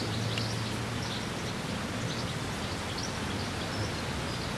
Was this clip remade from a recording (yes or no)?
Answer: no